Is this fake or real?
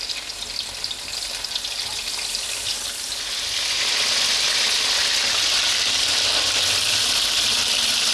real